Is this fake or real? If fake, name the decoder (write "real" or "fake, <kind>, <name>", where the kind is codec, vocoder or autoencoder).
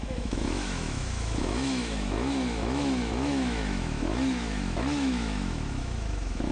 fake, autoencoder, DAC-VAE